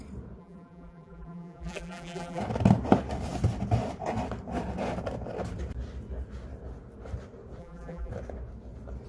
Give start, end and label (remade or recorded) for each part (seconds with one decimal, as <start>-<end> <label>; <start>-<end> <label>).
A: 0.0-0.4 recorded; 0.4-2.4 remade; 2.4-7.6 recorded; 7.6-8.1 remade; 8.1-9.1 recorded